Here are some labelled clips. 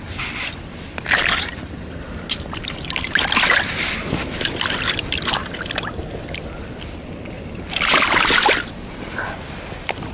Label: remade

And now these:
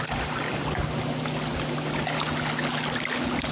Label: recorded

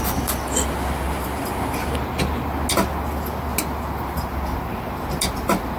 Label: recorded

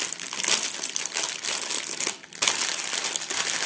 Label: recorded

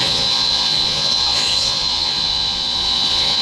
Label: remade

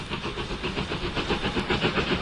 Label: recorded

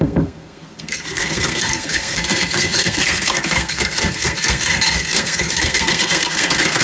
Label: remade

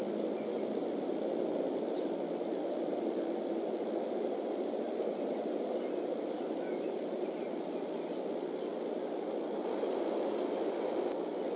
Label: remade